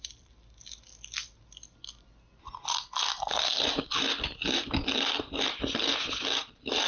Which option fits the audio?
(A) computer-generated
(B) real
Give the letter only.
B